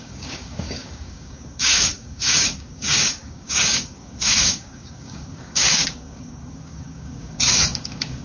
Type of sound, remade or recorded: remade